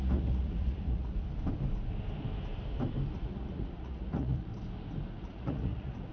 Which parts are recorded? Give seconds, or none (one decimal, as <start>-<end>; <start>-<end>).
1.1-3.1; 4.5-5.2